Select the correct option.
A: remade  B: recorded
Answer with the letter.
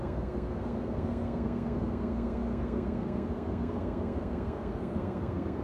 A